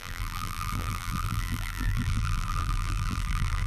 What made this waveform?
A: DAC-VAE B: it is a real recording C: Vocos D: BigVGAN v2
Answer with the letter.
D